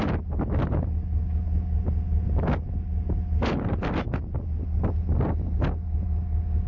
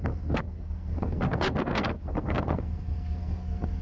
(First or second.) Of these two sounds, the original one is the first